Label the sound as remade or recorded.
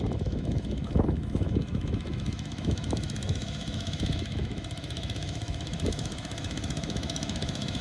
remade